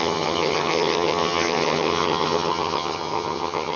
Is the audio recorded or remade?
remade